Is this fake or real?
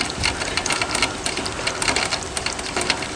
real